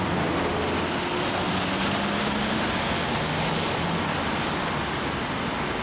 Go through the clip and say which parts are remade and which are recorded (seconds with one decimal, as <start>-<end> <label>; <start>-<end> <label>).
0.0-5.8 recorded